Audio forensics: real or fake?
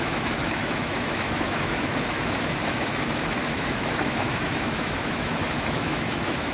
fake